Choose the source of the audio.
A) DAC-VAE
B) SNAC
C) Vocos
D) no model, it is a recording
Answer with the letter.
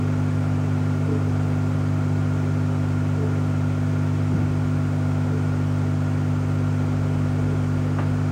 D